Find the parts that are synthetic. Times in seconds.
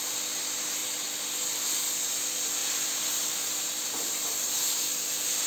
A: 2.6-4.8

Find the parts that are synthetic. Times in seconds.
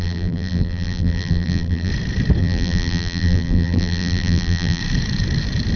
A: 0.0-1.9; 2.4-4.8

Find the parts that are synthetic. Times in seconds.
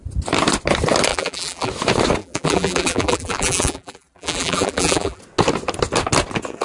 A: 1.1-1.7; 2.2-5.2